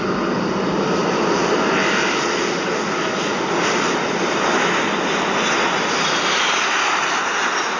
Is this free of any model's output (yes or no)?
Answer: yes